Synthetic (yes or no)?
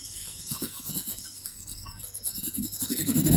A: yes